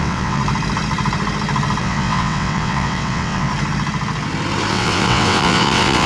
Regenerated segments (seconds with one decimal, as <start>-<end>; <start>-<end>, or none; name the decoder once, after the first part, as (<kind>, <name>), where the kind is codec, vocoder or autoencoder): 0.0-0.4 (vocoder, WaveNeXt); 1.8-3.5; 4.7-6.1